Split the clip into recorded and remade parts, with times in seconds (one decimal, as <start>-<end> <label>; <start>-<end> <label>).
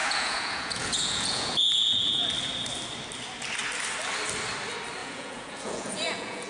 0.0-2.3 remade; 2.3-5.0 recorded; 5.0-6.5 remade